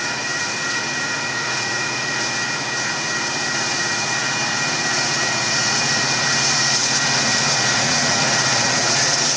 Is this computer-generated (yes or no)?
yes